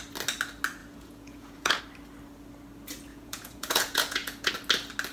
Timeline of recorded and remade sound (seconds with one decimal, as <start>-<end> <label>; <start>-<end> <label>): 0.0-0.8 recorded; 0.8-1.8 remade; 1.8-3.1 recorded; 3.1-4.5 remade; 4.5-5.1 recorded